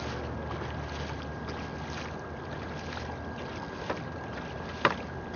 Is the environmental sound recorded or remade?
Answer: recorded